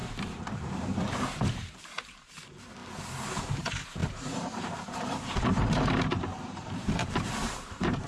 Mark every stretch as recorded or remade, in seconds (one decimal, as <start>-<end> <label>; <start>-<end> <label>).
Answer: 0.0-0.6 recorded; 0.6-2.8 remade; 2.8-3.4 recorded; 3.4-8.1 remade